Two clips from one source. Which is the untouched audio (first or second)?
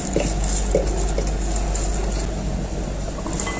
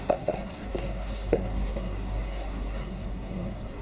first